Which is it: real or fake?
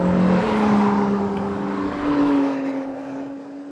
fake